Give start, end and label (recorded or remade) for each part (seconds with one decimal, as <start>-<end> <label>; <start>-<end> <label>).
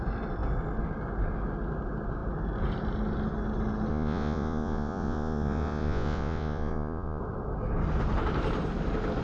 0.0-3.9 recorded; 3.9-7.2 remade; 7.2-9.2 recorded